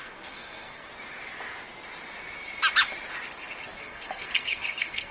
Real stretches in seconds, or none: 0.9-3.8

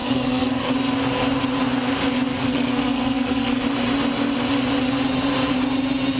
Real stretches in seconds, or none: 0.7-2.3; 3.6-6.2

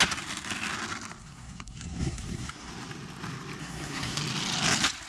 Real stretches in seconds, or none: 0.0-1.2; 2.7-3.6; 4.2-5.1

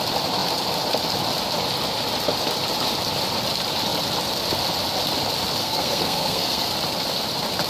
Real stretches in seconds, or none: 0.0-5.6; 6.7-7.7

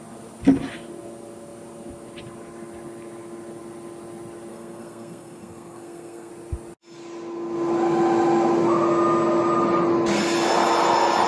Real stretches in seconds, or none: 0.0-4.5; 6.3-11.3

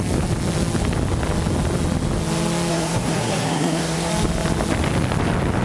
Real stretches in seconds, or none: 0.0-2.7; 4.1-5.6